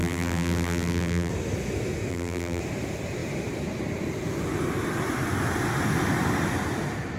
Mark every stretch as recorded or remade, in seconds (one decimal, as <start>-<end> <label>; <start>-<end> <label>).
0.0-1.3 remade; 1.3-2.1 recorded; 2.1-2.6 remade; 2.6-7.2 recorded